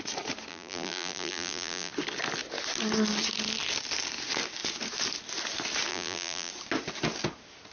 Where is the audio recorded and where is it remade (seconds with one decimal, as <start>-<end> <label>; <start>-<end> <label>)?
0.0-0.5 recorded; 0.5-1.9 remade; 1.9-5.9 recorded; 5.9-6.5 remade; 6.5-7.7 recorded